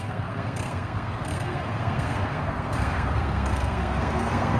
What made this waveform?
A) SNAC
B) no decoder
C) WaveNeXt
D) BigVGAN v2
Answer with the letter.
A